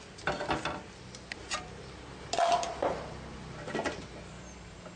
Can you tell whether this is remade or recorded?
recorded